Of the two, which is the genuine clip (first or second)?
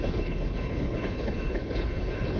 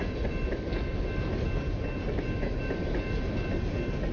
second